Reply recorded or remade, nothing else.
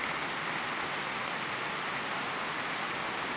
recorded